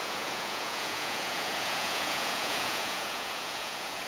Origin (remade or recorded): remade